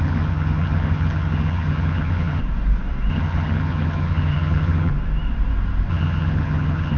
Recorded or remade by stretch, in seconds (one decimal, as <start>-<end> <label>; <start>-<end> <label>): 0.0-2.4 remade; 2.4-3.1 recorded; 3.1-4.9 remade; 4.9-5.9 recorded; 5.9-7.0 remade